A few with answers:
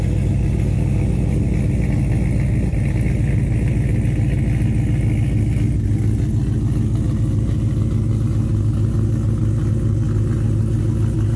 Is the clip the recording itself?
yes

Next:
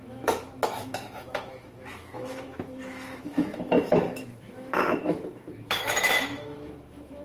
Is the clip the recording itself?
no